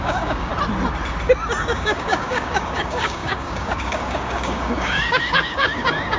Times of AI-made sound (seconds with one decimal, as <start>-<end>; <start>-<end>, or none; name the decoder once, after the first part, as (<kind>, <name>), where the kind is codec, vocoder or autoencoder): 0.0-0.5 (codec, DAC); 1.6-6.2